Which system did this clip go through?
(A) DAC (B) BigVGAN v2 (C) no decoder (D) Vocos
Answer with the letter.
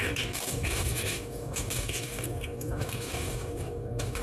A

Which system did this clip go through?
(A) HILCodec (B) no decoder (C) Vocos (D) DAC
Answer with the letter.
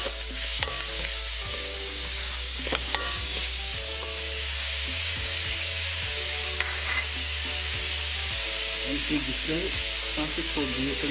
D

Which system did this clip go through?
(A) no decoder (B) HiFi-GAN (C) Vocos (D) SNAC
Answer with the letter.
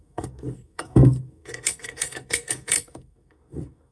D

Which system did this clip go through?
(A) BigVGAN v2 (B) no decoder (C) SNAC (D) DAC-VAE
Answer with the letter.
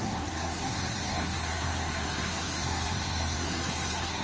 C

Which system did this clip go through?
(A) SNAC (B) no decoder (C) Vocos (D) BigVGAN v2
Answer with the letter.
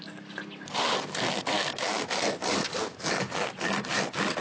B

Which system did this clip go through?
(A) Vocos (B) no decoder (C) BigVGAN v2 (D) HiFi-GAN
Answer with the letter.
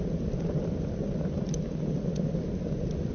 C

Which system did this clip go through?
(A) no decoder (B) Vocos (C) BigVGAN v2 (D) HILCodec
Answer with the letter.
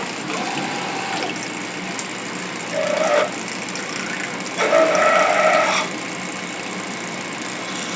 A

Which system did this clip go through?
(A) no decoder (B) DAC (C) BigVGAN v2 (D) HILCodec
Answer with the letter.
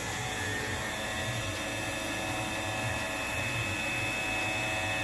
A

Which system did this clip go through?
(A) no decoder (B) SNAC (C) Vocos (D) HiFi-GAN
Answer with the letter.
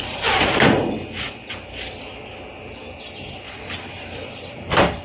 A